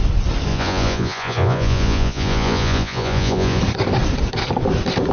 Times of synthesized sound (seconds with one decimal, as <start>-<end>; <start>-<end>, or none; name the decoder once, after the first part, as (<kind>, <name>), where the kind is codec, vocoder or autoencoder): 0.5-3.6 (vocoder, Vocos)